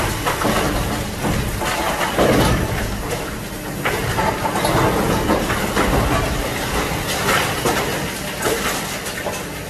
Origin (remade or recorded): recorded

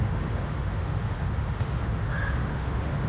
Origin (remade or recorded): remade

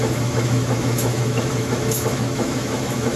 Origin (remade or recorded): remade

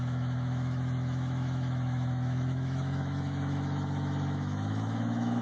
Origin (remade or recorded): remade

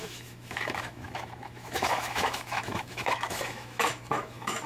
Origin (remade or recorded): remade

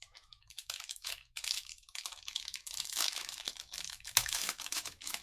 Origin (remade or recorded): remade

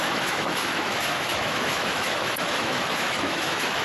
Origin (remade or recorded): remade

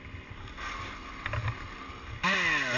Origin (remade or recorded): recorded